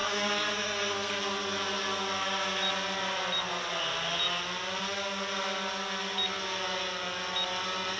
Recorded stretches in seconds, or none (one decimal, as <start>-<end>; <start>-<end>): 1.2-8.0